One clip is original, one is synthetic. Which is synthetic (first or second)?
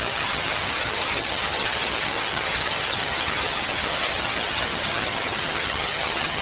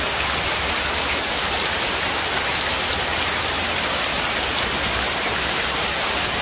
first